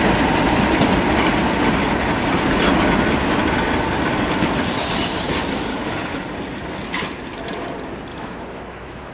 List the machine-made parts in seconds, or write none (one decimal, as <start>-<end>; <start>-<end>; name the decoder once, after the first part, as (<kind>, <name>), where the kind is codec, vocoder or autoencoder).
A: 5.7-6.2 (autoencoder, DAC-VAE); 8.1-9.1